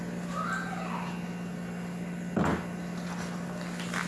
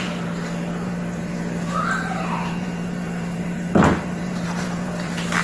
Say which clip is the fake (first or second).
second